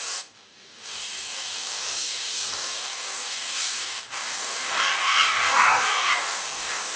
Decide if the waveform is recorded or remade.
remade